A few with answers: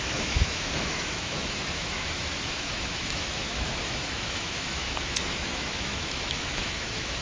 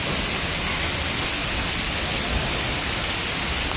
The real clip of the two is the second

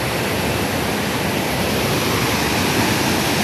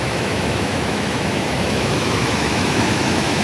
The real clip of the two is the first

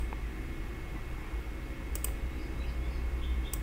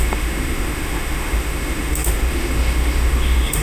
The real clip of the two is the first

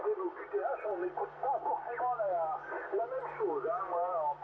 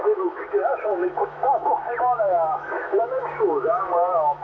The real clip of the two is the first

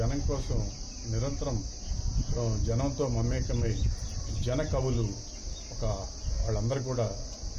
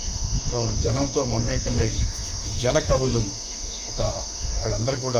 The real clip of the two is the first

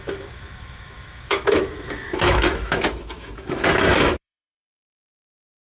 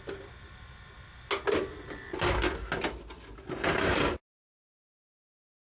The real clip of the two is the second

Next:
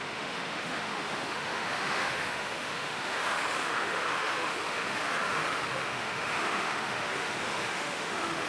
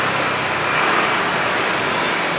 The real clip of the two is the second